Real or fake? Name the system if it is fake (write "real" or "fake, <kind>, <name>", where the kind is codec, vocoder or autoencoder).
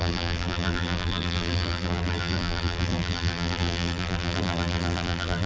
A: fake, vocoder, BigVGAN v2